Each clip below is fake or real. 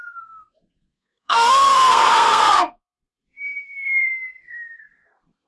fake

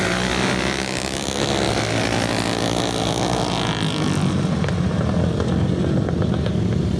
real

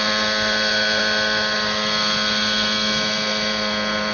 real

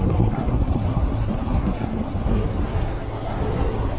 fake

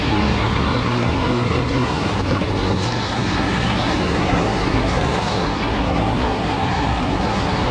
fake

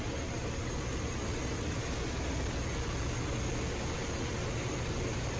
real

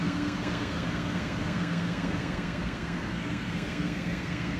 fake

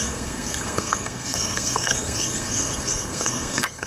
fake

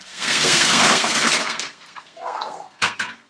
fake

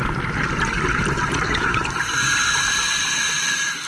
real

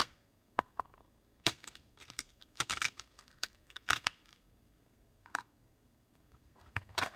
fake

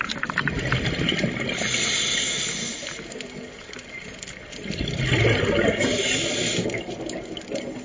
real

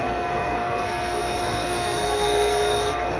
fake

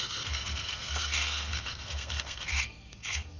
fake